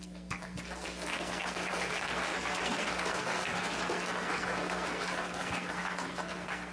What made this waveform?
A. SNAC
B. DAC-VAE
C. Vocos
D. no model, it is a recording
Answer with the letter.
A